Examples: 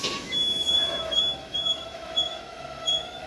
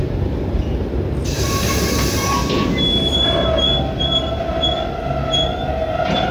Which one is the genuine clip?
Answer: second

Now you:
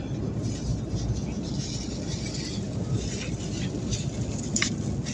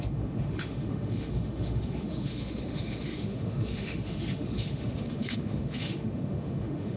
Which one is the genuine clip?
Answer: first